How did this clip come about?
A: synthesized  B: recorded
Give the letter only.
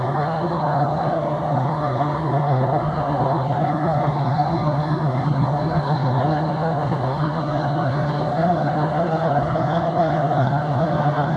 A